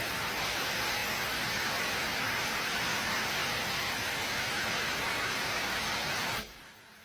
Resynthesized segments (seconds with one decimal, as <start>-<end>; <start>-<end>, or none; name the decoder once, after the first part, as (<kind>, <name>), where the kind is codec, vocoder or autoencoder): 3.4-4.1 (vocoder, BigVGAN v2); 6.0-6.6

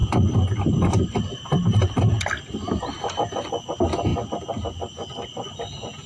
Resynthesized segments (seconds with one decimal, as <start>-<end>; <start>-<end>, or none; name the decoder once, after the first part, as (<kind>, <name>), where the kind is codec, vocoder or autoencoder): none

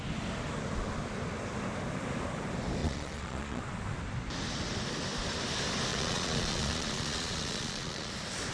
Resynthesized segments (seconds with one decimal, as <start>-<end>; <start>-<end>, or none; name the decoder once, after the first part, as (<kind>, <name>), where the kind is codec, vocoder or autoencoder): 2.8-3.6 (vocoder, Vocos); 5.9-8.1

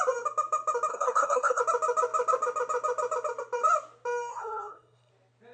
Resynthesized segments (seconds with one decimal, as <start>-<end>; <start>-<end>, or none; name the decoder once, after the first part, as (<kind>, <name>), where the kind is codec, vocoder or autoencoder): 0.9-1.6 (codec, SNAC); 4.3-5.1